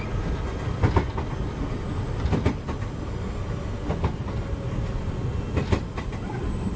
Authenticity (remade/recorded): recorded